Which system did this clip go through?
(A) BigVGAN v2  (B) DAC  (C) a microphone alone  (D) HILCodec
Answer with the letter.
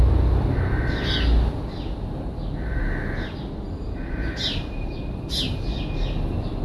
C